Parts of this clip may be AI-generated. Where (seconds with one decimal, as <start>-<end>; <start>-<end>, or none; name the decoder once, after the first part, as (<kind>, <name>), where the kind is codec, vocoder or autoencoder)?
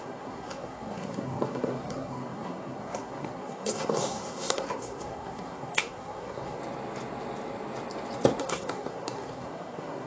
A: 0.0-6.6 (codec, SNAC); 8.4-10.1